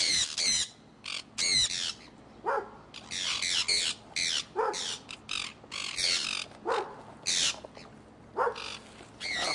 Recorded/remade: recorded